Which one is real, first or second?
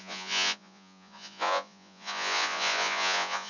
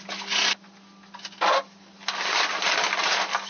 second